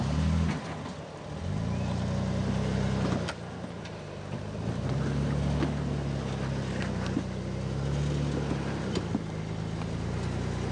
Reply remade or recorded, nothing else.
recorded